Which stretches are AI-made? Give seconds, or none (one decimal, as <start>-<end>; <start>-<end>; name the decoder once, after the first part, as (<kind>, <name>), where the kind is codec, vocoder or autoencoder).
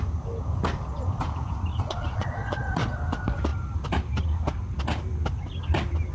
1.7-3.0 (vocoder, Vocos)